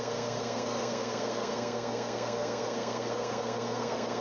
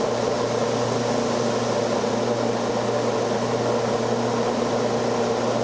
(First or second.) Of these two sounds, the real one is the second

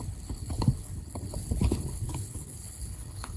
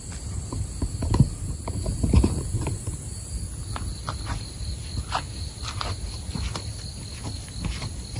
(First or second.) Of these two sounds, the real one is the second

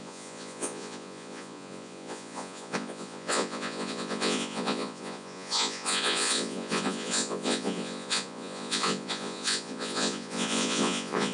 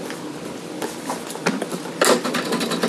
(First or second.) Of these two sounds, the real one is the second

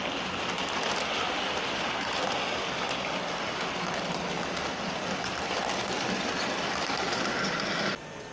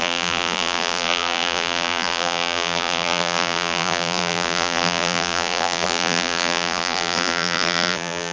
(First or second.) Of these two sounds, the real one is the first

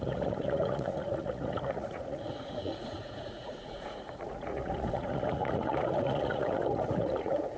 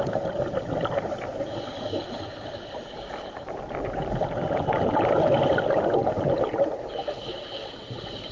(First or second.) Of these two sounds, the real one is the second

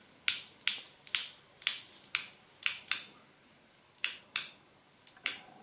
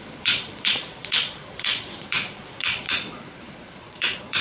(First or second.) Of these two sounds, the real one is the first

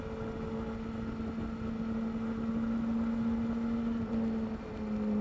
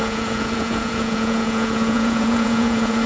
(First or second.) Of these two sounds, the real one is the first